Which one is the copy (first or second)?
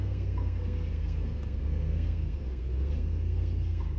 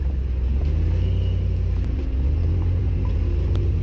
first